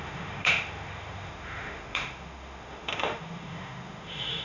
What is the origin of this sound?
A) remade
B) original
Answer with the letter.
A